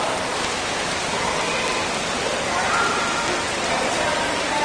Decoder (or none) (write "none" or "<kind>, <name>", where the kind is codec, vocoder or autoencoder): none